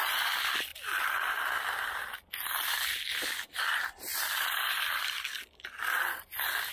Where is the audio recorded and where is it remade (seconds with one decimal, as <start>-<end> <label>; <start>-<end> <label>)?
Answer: 0.0-4.1 recorded; 4.1-5.2 remade; 5.2-6.7 recorded